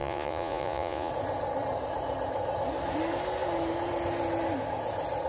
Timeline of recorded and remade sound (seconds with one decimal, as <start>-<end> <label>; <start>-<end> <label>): 0.0-1.1 remade; 1.1-5.3 recorded